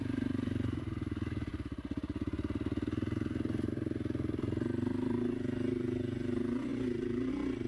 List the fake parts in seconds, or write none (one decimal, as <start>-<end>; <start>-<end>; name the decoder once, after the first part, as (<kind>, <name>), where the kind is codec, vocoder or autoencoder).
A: none

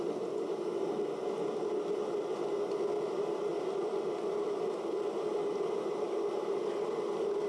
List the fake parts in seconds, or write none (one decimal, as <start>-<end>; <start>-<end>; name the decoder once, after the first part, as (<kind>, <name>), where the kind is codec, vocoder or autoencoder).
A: none

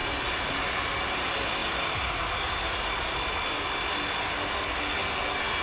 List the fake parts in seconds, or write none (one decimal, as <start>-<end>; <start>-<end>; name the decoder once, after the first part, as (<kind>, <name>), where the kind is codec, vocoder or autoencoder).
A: none

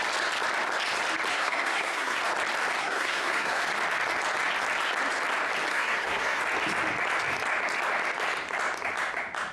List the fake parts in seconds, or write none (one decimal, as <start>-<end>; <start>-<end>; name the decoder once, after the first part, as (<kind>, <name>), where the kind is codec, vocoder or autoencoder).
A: 1.3-2.2 (codec, SNAC); 2.8-3.6; 5.7-6.4

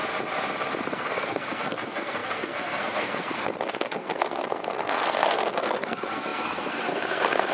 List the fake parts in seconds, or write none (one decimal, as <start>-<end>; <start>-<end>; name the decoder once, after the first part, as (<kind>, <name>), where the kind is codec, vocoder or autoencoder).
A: 0.8-7.5 (codec, SNAC)

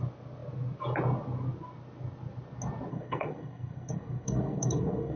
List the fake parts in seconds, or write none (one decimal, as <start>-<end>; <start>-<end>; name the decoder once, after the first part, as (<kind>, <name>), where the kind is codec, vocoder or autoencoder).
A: 2.9-5.2 (codec, SNAC)